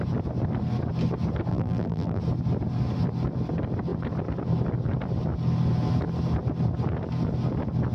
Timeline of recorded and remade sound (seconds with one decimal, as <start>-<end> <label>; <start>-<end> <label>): 0.0-1.5 recorded; 1.5-2.2 remade; 2.2-7.9 recorded